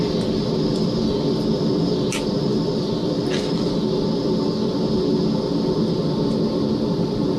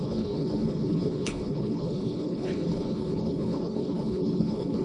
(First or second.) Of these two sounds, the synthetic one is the second